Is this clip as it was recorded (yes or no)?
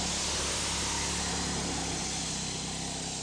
yes